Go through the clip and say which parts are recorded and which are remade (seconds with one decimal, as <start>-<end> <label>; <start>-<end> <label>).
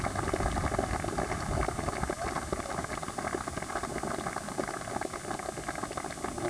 0.0-6.5 recorded